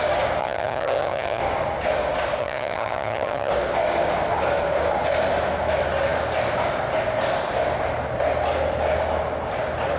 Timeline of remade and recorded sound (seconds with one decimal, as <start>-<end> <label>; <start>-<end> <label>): 0.0-0.4 recorded; 0.4-1.4 remade; 1.4-2.4 recorded; 2.4-3.5 remade; 3.5-10.0 recorded